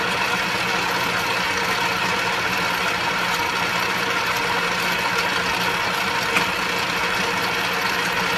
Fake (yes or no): no